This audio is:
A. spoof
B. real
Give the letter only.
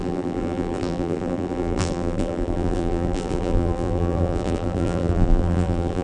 A